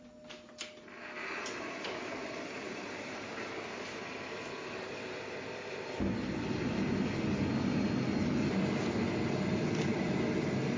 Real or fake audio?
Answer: real